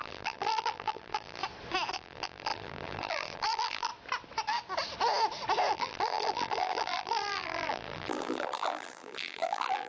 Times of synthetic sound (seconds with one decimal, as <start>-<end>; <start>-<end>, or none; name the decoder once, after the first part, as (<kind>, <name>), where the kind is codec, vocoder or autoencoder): 0.0-1.4 (vocoder, BigVGAN v2); 1.9-3.9; 5.7-9.9